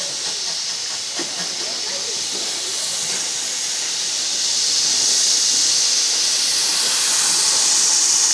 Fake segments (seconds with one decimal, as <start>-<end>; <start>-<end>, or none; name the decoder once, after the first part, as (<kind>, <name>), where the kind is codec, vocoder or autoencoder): none